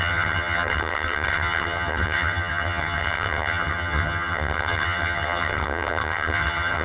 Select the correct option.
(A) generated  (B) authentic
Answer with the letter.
A